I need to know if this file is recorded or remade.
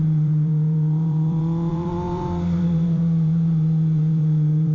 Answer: remade